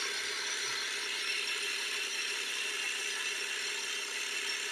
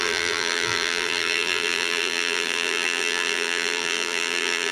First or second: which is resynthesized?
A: second